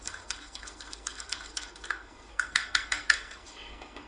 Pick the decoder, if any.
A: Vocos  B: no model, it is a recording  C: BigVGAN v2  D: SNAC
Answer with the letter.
D